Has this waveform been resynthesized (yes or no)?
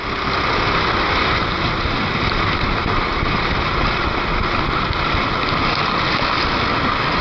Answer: no